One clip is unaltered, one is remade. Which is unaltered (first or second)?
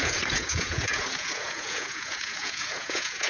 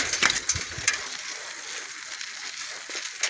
second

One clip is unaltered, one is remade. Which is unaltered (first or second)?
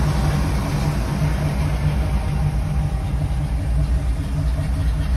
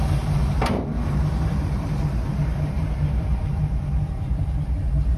first